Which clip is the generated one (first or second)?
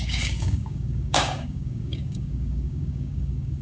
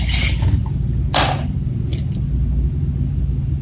first